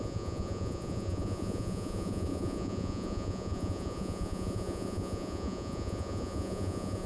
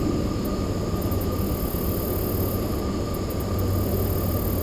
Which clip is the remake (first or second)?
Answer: first